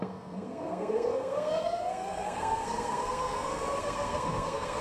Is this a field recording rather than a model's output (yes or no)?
no